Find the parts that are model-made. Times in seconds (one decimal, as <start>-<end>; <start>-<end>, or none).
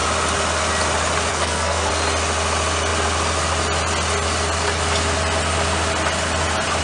1.3-1.9